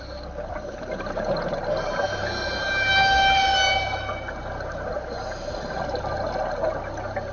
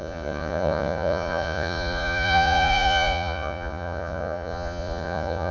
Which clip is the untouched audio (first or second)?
first